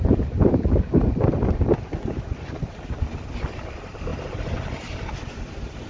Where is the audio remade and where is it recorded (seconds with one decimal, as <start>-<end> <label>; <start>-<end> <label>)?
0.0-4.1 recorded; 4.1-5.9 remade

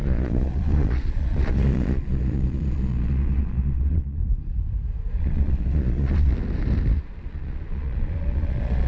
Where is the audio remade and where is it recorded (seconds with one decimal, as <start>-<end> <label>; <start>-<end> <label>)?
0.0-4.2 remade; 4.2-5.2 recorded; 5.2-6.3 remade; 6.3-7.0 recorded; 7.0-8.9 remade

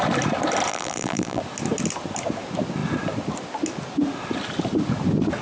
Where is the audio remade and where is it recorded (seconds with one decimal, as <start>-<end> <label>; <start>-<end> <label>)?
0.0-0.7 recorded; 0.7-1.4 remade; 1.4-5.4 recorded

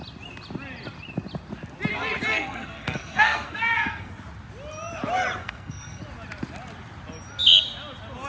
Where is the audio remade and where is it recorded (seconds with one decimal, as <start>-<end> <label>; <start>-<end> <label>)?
0.0-2.3 recorded; 2.3-4.1 remade; 4.1-5.4 recorded; 5.4-6.0 remade; 6.0-8.3 recorded

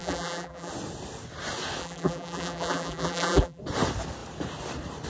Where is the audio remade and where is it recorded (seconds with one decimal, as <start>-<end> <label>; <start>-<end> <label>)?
0.0-0.7 remade; 0.7-1.8 recorded; 1.8-3.6 remade; 3.6-5.1 recorded